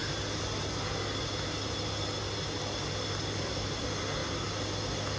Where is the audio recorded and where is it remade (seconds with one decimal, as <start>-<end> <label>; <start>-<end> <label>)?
0.0-5.2 recorded